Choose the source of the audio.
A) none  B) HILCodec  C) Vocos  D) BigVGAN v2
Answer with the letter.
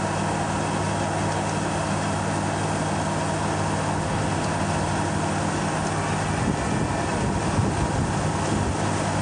A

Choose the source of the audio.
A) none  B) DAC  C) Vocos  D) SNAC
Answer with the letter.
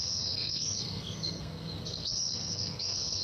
D